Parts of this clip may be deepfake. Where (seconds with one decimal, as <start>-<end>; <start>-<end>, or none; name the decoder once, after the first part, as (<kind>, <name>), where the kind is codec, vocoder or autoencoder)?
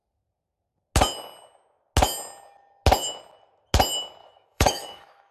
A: 4.2-5.3 (autoencoder, DAC-VAE)